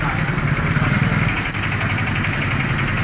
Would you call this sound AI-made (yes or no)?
no